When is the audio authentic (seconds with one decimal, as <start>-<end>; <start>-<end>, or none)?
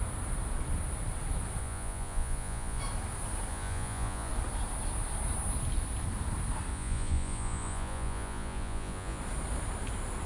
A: 0.0-1.6; 2.8-3.5; 4.3-6.7; 9.2-10.3